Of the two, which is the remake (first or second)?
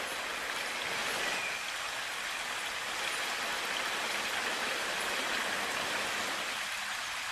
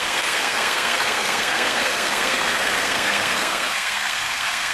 second